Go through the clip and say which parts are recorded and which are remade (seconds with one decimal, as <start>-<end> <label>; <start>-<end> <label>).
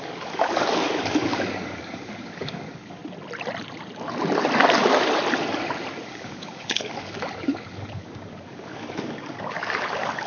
0.0-3.0 remade; 3.0-6.1 recorded; 6.1-10.3 remade